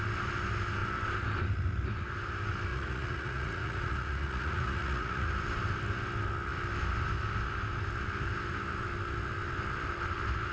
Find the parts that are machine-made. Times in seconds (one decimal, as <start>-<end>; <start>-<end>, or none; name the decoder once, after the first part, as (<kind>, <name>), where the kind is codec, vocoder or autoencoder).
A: 2.7-5.3 (vocoder, Vocos)